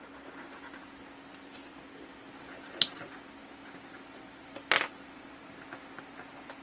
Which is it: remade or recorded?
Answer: recorded